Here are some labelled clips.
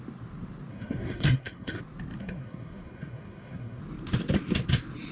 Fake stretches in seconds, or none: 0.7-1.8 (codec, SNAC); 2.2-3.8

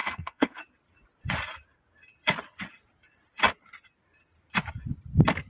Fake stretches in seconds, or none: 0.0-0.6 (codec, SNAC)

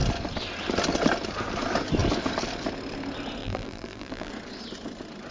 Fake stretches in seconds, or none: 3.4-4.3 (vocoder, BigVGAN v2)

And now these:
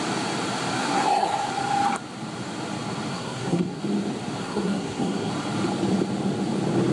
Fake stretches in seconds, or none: 0.8-1.5 (codec, SNAC); 3.1-3.8; 4.4-5.3

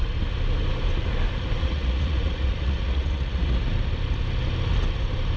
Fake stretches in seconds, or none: 1.6-3.6 (vocoder, Vocos)

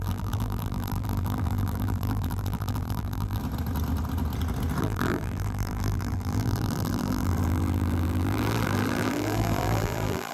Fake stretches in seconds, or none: 0.0-3.4 (vocoder, BigVGAN v2); 4.8-10.3

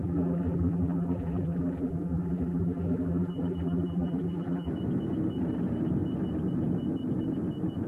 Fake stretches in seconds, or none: 0.0-4.7 (vocoder, BigVGAN v2)

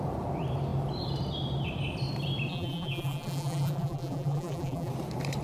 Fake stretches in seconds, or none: 2.5-4.9 (vocoder, BigVGAN v2)